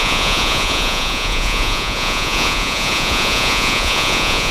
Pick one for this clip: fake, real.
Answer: fake